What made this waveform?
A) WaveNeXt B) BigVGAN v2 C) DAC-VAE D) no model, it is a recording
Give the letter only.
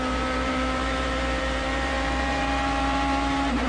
B